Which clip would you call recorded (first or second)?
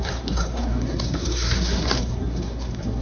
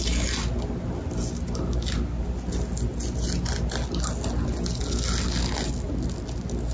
second